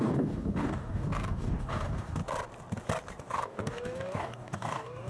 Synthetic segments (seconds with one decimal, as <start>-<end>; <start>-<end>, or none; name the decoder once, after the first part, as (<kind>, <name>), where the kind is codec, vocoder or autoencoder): 0.0-2.2 (codec, DAC); 3.2-5.1